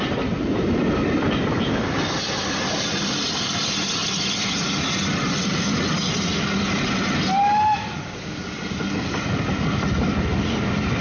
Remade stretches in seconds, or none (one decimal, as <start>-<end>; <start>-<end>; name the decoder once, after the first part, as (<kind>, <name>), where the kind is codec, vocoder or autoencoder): none